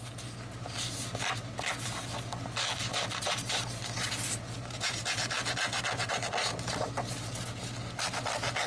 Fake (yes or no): no